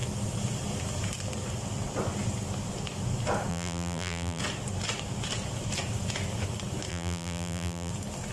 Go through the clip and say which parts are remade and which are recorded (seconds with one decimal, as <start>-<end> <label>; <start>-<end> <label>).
0.0-3.5 recorded; 3.5-4.4 remade; 4.4-6.9 recorded; 6.9-7.9 remade; 7.9-8.3 recorded